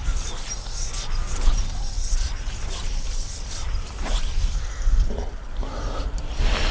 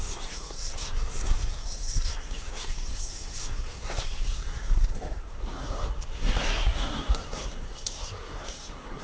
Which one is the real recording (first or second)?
first